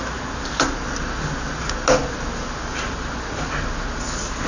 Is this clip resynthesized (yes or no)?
no